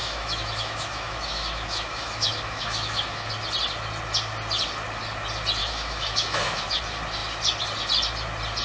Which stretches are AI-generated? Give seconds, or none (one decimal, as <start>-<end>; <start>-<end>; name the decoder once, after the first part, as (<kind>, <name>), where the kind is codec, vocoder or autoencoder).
0.0-3.3 (autoencoder, DAC-VAE); 5.6-6.8